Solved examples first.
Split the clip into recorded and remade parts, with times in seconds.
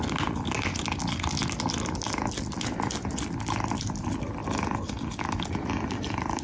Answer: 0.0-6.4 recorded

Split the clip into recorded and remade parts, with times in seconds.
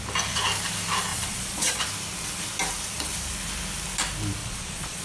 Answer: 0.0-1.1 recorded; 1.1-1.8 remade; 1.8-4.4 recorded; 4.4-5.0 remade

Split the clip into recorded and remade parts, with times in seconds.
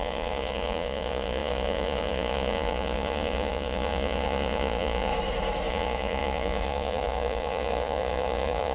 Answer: 0.0-5.1 remade; 5.1-5.7 recorded; 5.7-8.7 remade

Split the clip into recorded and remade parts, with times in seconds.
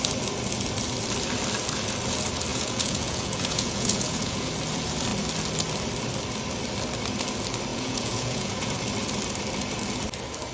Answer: 0.0-2.5 recorded; 2.5-4.5 remade; 4.5-7.7 recorded; 7.7-8.7 remade; 8.7-10.5 recorded